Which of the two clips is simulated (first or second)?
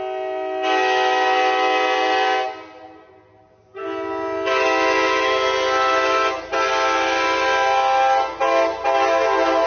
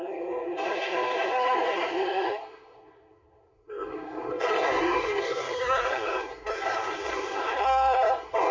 second